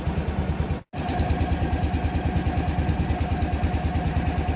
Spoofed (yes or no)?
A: no